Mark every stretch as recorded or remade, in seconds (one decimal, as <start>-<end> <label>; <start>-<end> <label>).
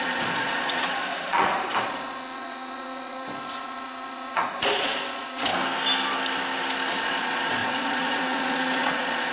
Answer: 0.0-5.5 remade; 5.5-7.0 recorded; 7.0-9.3 remade